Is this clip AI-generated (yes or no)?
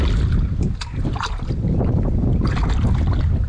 no